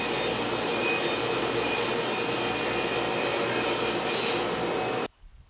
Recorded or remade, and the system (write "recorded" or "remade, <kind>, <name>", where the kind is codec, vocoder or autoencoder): recorded